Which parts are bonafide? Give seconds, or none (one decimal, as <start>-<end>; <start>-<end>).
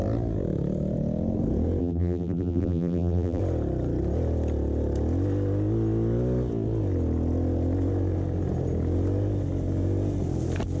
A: 0.0-1.8; 3.4-10.8